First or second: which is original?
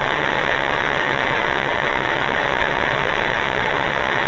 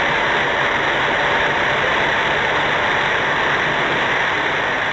second